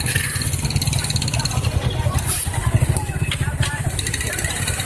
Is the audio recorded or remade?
recorded